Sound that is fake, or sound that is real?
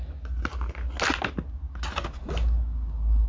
real